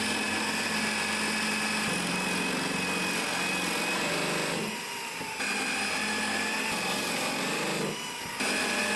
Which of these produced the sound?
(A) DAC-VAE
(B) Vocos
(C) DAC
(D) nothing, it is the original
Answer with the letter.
D